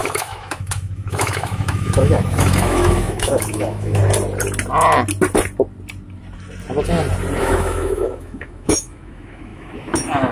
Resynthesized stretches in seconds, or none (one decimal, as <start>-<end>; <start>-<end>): 0.0-4.0; 7.4-10.3